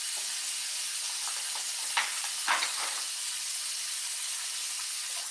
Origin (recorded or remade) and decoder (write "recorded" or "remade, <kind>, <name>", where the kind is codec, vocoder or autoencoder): recorded